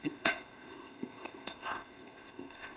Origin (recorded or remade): remade